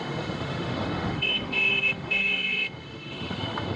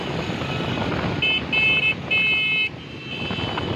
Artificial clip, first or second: first